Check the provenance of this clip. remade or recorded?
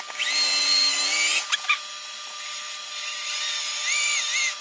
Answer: recorded